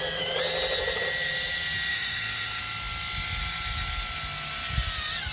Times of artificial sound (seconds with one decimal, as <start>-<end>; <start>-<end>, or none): 1.9-2.6